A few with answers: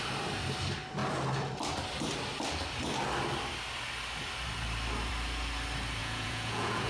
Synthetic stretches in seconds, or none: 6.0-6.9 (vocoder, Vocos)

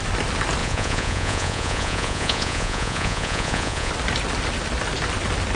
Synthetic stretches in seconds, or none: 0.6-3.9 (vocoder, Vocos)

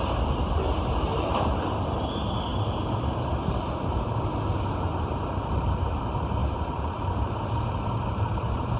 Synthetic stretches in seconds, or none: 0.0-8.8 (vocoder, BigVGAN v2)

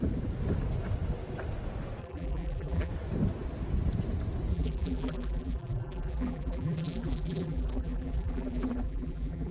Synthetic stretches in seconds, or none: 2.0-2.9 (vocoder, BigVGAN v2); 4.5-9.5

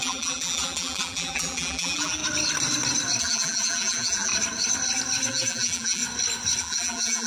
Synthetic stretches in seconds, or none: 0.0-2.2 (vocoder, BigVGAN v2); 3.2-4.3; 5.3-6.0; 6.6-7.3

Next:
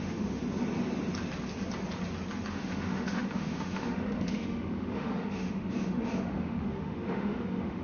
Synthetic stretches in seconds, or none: 0.0-0.4 (autoencoder, DAC-VAE); 2.5-7.8

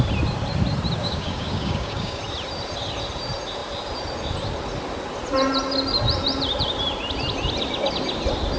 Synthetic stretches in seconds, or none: 1.0-2.2 (codec, DAC)